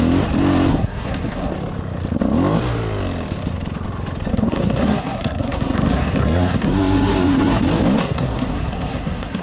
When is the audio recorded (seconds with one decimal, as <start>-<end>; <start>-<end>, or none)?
0.0-0.7; 1.5-4.3; 7.6-8.0